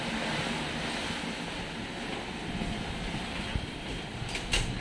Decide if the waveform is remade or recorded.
recorded